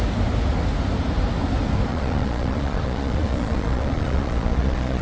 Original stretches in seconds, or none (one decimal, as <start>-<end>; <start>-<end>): 0.0-1.9